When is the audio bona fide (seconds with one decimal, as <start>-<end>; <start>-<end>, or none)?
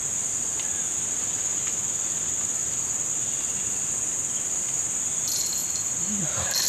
0.0-6.7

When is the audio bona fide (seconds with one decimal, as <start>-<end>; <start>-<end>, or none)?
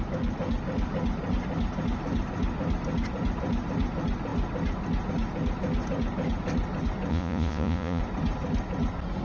0.0-7.1; 8.0-9.2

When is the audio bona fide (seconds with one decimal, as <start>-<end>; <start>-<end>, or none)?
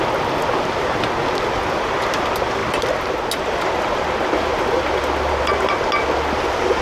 0.0-6.8